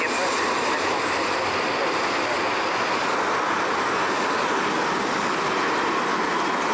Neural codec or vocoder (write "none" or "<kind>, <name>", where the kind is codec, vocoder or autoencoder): none